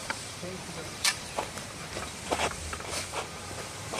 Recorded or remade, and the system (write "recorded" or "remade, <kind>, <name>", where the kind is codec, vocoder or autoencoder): remade, vocoder, BigVGAN v2